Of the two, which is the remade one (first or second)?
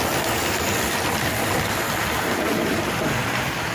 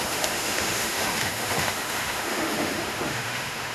second